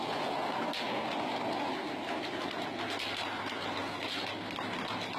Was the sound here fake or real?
real